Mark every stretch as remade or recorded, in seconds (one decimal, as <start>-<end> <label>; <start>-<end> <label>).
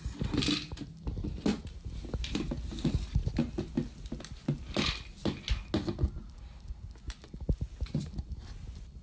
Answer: 0.0-1.5 recorded; 1.5-2.2 remade; 2.2-9.0 recorded